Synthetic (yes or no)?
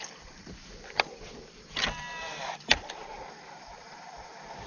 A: no